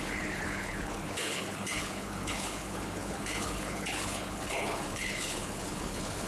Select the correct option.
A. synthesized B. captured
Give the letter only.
A